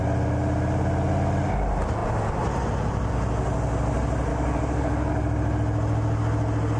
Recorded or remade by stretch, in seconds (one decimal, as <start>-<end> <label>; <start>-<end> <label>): 0.0-4.3 recorded; 4.3-5.1 remade; 5.1-6.8 recorded